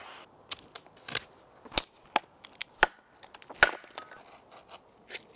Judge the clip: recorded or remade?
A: recorded